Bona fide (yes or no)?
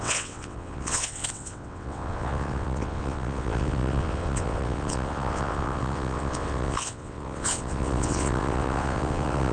no